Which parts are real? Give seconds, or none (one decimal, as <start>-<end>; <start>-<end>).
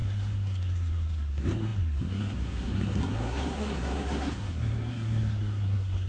none